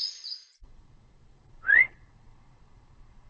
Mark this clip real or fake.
fake